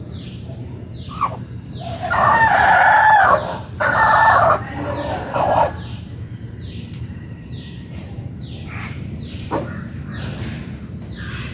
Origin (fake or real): fake